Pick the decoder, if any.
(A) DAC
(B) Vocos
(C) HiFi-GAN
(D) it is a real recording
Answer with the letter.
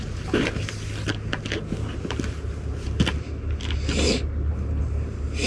D